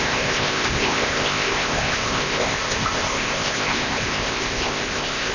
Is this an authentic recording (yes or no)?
no